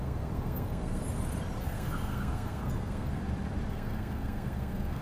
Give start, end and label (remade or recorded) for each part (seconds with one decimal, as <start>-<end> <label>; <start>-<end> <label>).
0.0-1.0 remade; 1.0-1.6 recorded; 1.6-3.2 remade; 3.2-3.7 recorded; 3.7-5.0 remade